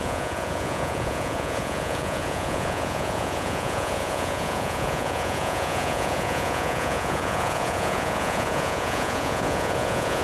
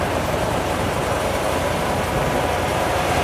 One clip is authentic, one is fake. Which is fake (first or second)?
first